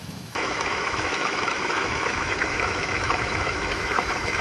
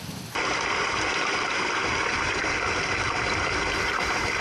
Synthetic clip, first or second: first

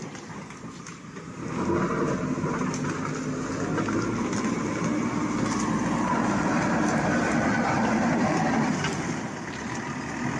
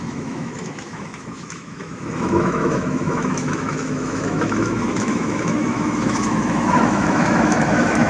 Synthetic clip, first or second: second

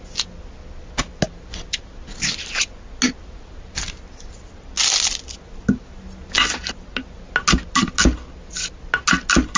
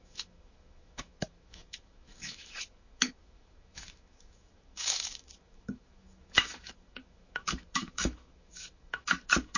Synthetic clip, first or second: second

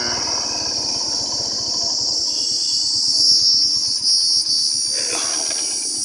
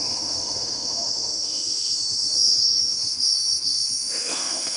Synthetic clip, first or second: second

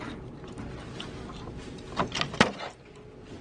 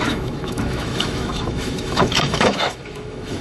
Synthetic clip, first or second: second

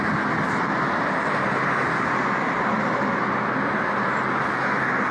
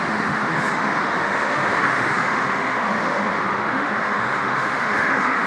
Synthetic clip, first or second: second